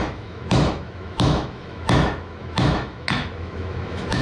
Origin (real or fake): fake